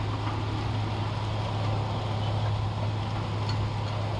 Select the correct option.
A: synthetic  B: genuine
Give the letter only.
B